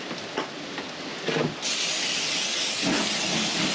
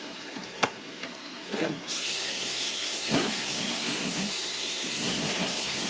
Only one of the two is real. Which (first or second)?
first